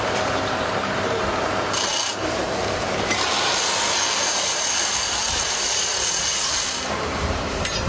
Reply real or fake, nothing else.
fake